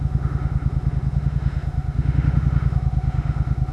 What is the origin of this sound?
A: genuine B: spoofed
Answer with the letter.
B